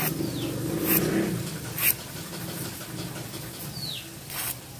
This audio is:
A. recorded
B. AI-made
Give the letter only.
A